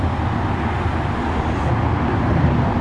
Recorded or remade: recorded